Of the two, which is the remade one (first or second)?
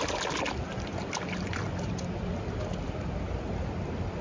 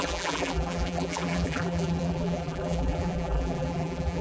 second